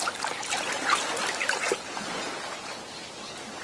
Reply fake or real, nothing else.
real